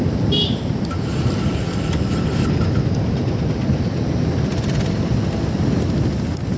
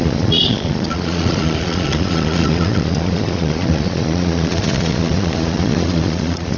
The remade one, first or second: second